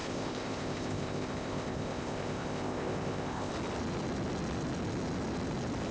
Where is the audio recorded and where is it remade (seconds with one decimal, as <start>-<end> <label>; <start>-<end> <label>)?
0.0-3.5 remade; 3.5-5.9 recorded